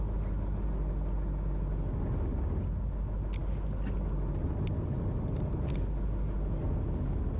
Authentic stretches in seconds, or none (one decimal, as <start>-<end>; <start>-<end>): 0.0-7.4